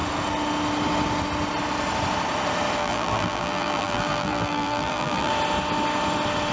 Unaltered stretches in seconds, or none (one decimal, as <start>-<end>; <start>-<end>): 0.0-2.8; 5.3-6.5